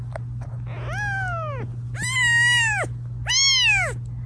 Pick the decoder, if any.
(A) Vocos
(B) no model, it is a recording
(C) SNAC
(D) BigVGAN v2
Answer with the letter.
B